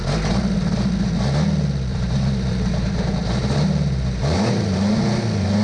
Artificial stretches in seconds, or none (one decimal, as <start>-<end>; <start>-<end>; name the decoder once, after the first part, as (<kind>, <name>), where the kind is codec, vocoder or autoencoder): 1.9-5.0 (vocoder, BigVGAN v2)